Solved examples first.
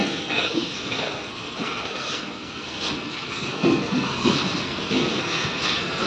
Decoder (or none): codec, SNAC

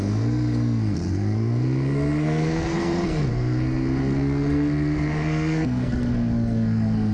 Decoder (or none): codec, SNAC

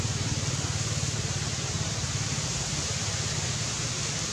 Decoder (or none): none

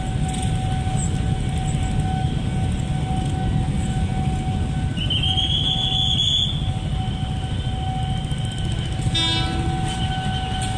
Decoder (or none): none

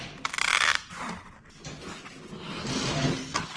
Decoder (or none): none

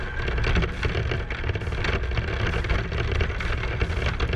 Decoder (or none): none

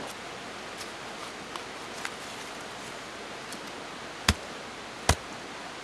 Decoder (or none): none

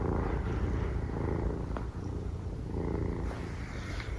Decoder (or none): none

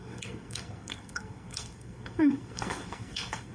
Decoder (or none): codec, SNAC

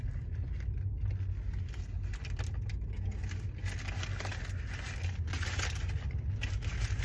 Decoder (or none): none